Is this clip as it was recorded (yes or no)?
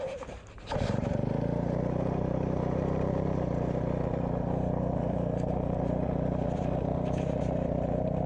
no